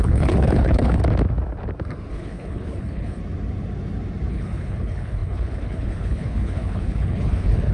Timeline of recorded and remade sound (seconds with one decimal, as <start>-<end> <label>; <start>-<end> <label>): 0.0-1.0 remade; 1.0-2.1 recorded; 2.1-3.2 remade; 3.2-4.3 recorded; 4.3-7.7 remade